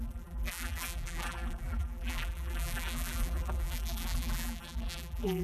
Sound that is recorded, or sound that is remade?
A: remade